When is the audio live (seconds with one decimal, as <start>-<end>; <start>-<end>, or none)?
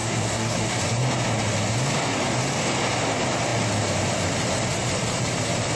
0.8-5.8